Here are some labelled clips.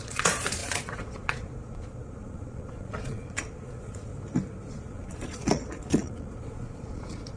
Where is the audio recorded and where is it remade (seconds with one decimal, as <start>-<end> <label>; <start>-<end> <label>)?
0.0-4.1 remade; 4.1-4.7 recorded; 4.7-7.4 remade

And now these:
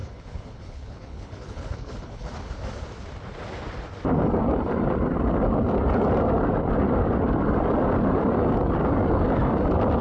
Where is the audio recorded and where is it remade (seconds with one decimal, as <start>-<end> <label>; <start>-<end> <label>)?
0.0-2.3 remade; 2.3-10.0 recorded

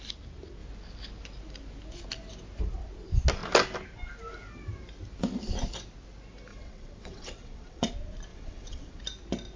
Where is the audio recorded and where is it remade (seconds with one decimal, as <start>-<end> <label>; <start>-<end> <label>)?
0.0-6.5 recorded; 6.5-7.9 remade; 7.9-8.3 recorded; 8.3-9.0 remade; 9.0-9.6 recorded

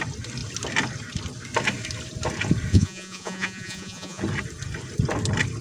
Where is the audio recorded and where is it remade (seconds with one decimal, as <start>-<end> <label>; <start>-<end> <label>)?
0.0-2.7 recorded; 2.7-4.2 remade; 4.2-5.6 recorded

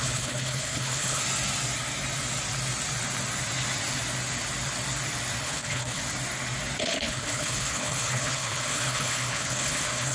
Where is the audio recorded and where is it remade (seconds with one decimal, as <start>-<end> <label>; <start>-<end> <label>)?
0.0-1.2 remade; 1.2-5.4 recorded; 5.4-6.0 remade; 6.0-6.8 recorded; 6.8-10.1 remade